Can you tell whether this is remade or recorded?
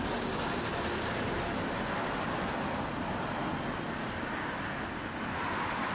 recorded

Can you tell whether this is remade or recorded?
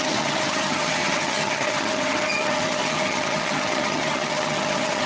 remade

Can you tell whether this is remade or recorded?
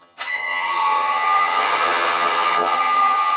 remade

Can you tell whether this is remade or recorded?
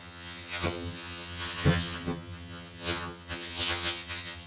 remade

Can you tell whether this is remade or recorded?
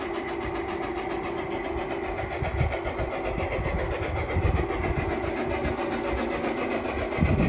recorded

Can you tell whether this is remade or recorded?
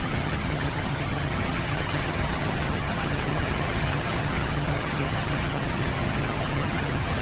remade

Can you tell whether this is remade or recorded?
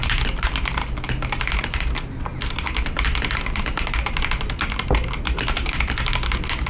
recorded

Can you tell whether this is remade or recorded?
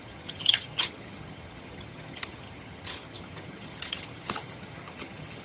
remade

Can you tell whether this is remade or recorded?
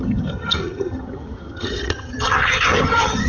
remade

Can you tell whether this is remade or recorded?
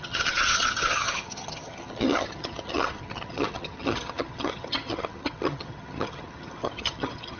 remade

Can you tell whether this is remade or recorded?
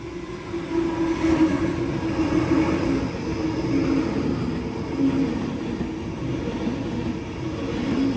recorded